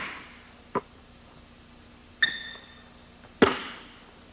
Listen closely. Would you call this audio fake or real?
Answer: real